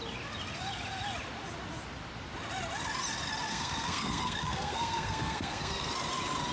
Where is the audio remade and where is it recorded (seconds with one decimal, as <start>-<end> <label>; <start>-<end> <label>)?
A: 0.0-3.5 recorded; 3.5-5.9 remade; 5.9-6.5 recorded